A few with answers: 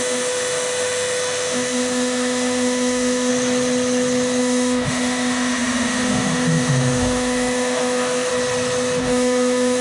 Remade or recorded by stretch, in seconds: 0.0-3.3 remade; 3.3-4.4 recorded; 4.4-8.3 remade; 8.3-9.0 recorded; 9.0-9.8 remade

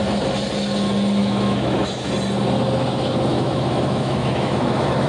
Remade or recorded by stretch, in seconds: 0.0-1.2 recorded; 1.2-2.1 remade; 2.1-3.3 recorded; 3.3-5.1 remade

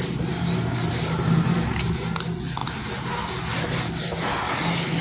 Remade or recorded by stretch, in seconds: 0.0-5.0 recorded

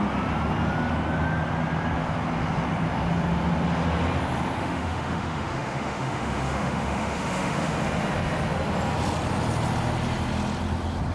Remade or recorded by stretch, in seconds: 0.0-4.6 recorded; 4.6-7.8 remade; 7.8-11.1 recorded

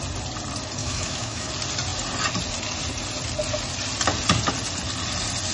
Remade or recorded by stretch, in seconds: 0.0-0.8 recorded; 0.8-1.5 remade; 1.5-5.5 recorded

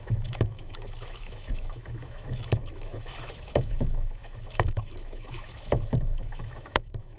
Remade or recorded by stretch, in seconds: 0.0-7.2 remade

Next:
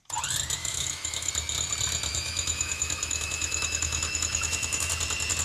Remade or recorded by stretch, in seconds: 0.0-0.6 recorded; 0.6-1.3 remade; 1.3-2.1 recorded; 2.1-4.9 remade; 4.9-5.4 recorded